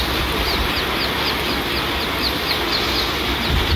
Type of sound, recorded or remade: recorded